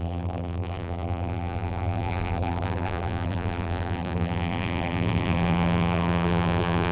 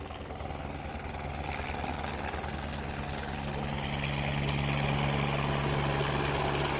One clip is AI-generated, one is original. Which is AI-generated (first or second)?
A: first